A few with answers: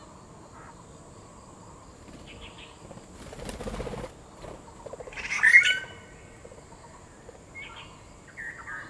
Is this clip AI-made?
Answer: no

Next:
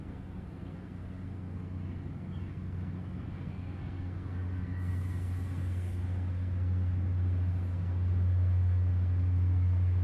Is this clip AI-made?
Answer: yes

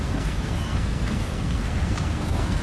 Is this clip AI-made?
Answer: yes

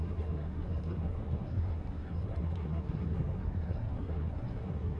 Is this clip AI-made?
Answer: yes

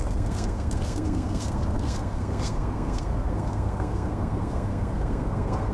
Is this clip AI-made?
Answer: yes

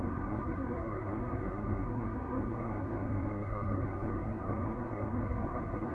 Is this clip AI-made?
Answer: yes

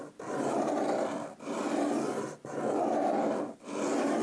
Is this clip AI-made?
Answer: no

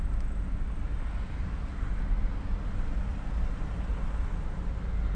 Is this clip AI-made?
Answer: no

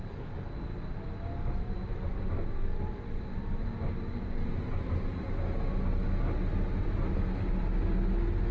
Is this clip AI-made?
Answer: no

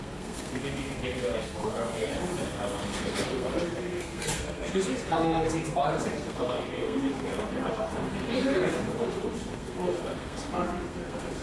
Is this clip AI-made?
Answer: yes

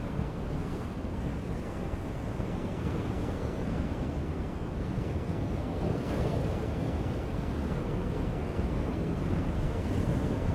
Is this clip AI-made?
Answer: yes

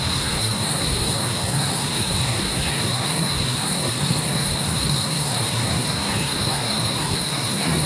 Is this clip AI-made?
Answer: yes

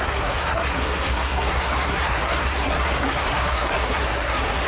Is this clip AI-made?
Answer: yes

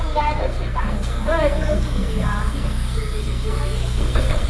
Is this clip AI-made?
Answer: yes